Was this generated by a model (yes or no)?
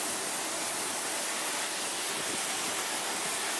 no